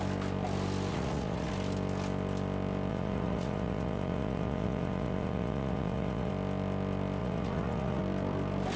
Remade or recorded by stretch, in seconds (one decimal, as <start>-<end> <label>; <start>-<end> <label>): 0.0-0.9 recorded; 0.9-1.5 remade; 1.5-2.9 recorded; 2.9-6.3 remade; 6.3-7.2 recorded; 7.2-8.0 remade; 8.0-8.8 recorded

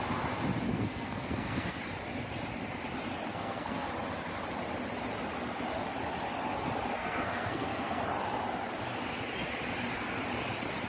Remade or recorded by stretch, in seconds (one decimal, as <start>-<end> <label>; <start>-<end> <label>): 0.0-0.7 recorded; 0.7-1.8 remade; 1.8-3.3 recorded; 3.3-3.9 remade; 3.9-7.0 recorded; 7.0-8.0 remade; 8.0-10.9 recorded

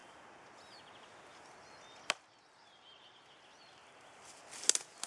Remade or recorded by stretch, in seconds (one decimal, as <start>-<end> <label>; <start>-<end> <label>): 0.0-2.6 recorded; 2.6-3.4 remade; 3.4-3.8 recorded; 3.8-4.4 remade; 4.4-5.1 recorded